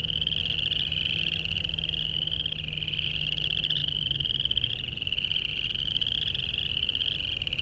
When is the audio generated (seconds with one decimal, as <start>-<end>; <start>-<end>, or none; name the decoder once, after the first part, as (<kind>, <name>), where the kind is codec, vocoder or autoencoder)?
3.8-4.7 (vocoder, BigVGAN v2); 5.3-6.6